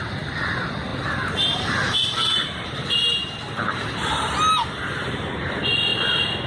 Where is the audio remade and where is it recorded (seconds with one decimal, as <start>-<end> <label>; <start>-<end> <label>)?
0.0-0.9 recorded; 0.9-3.6 remade; 3.6-6.5 recorded